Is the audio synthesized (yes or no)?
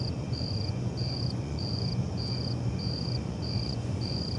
yes